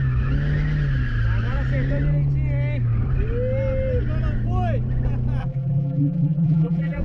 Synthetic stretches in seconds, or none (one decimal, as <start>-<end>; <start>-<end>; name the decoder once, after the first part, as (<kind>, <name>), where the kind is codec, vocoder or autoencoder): 5.4-7.0 (vocoder, BigVGAN v2)